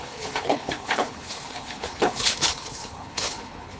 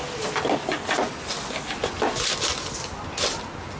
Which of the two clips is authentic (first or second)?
second